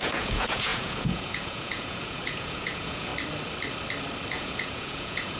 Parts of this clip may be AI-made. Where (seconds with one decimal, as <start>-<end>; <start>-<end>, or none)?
0.0-3.1; 4.3-5.4